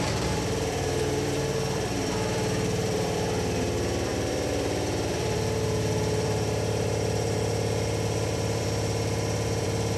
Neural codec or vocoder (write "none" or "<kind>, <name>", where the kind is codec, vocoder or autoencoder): vocoder, BigVGAN v2